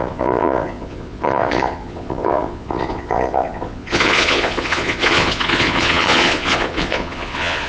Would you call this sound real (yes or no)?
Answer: no